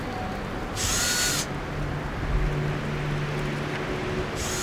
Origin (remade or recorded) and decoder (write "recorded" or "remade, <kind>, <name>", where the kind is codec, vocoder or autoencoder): recorded